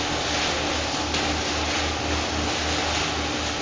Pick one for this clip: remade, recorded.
recorded